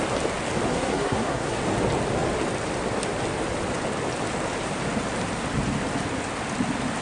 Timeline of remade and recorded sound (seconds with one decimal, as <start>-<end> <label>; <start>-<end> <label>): 0.0-0.7 recorded; 0.7-1.6 remade; 1.6-7.0 recorded